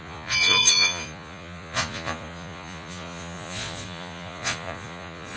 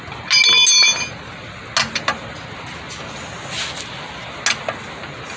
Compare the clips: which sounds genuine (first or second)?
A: second